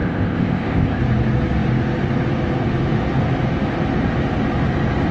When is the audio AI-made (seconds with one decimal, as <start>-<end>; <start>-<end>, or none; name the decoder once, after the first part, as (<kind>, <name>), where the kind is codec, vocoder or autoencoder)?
0.0-1.0 (codec, ZipCodec)